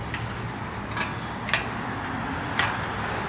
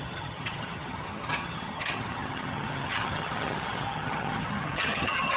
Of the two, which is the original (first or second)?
first